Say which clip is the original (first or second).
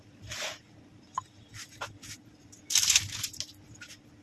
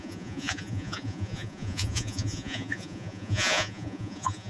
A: first